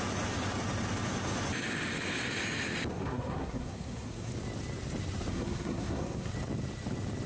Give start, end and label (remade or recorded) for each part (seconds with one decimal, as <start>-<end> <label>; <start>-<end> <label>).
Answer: 0.0-2.9 recorded; 2.9-4.3 remade; 4.3-5.3 recorded; 5.3-6.3 remade; 6.3-7.3 recorded